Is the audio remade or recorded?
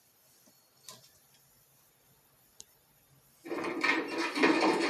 recorded